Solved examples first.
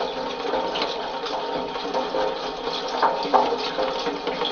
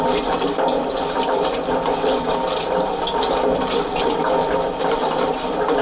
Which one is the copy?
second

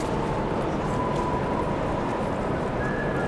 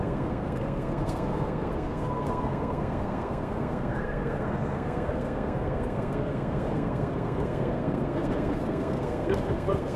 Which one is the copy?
second